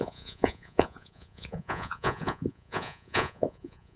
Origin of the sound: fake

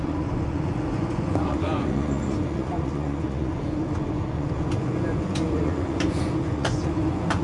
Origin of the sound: fake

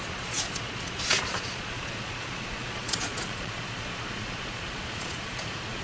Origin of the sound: fake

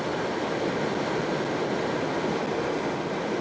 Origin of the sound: real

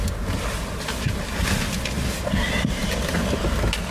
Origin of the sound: real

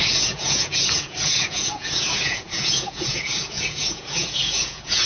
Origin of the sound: fake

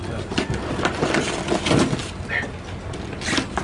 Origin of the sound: real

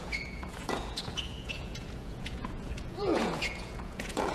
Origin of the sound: fake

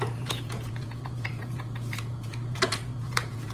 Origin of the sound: fake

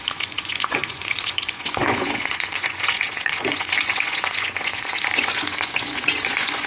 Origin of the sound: fake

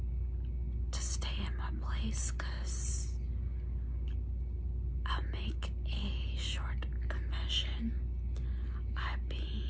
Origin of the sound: real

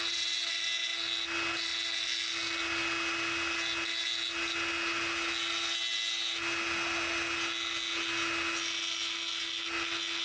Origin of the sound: real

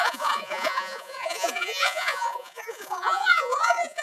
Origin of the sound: fake